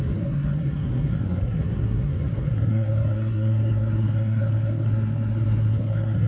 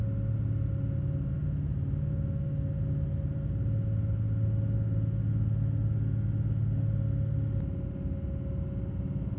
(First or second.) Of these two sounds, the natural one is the second